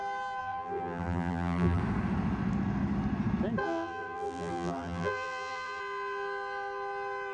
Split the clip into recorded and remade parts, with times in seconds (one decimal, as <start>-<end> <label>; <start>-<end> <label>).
0.0-0.4 recorded; 0.4-1.8 remade; 1.8-3.6 recorded; 3.6-5.8 remade; 5.8-7.3 recorded